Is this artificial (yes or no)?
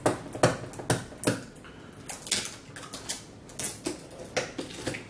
no